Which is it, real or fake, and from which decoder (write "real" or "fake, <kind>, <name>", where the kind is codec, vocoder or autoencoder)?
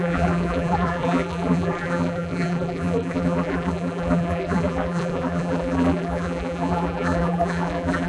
fake, vocoder, BigVGAN v2